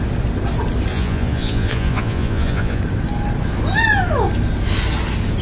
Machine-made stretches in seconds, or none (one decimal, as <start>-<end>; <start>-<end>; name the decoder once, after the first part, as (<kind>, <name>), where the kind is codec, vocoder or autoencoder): 0.9-2.8 (vocoder, Vocos)